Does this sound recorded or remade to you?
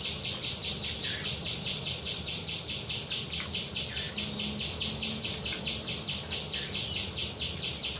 recorded